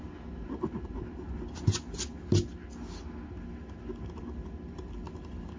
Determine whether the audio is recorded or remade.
recorded